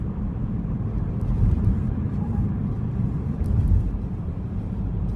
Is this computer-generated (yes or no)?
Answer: yes